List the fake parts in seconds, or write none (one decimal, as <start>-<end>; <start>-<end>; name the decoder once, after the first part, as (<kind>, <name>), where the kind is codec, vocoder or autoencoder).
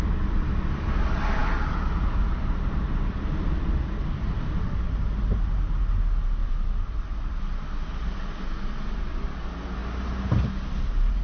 none